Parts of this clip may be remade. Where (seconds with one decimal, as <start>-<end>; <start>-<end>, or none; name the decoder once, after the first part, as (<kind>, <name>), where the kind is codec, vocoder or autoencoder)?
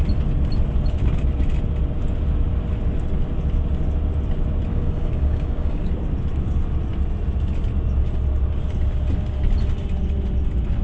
4.7-5.9 (codec, DAC)